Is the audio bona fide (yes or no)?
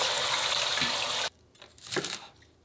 yes